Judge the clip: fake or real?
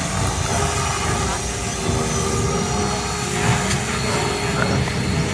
real